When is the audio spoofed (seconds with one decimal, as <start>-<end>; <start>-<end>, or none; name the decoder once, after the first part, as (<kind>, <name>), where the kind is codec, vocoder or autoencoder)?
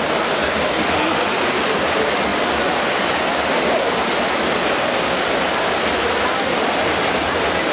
none